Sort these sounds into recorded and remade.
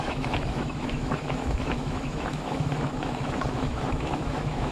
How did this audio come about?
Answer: remade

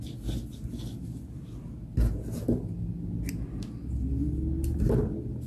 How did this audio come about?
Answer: recorded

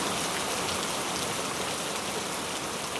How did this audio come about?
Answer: recorded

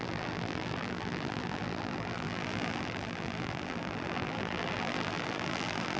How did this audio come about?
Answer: remade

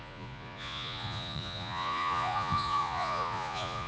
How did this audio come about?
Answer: remade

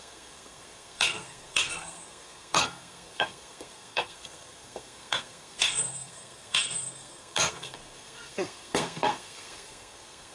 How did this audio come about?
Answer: remade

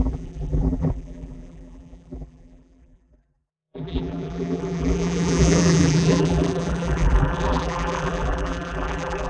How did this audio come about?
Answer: remade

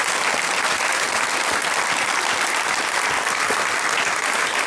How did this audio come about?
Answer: recorded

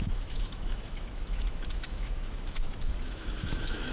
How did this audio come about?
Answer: remade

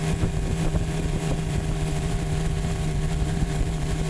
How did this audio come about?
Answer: remade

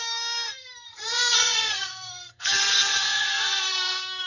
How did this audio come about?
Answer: remade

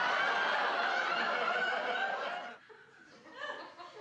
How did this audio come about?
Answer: recorded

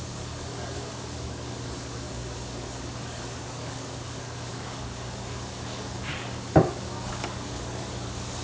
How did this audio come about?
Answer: remade